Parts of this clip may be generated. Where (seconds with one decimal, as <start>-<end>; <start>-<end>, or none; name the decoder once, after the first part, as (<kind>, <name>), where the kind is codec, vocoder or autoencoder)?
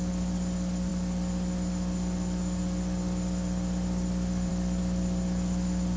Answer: none